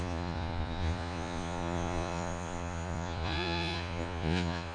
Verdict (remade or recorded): remade